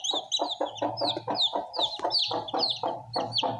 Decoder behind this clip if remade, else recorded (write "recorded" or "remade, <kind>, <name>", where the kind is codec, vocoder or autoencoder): recorded